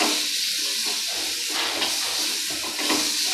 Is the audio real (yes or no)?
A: yes